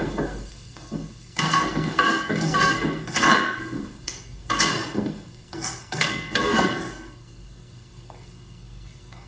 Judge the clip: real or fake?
fake